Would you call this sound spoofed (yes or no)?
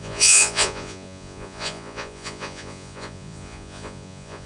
yes